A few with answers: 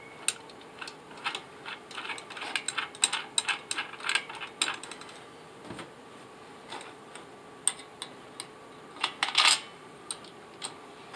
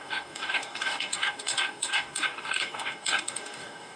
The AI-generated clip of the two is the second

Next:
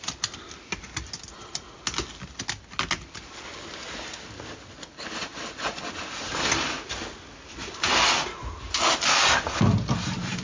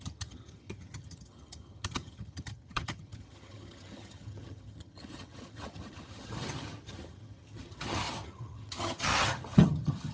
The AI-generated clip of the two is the second